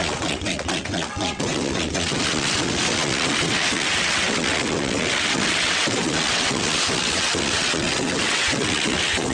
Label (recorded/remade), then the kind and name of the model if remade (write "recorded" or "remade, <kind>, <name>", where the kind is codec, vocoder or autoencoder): remade, vocoder, WaveNeXt